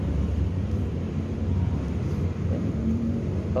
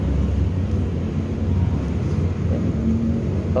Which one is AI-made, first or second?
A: first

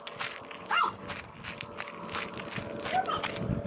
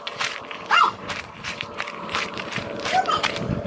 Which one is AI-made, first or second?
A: second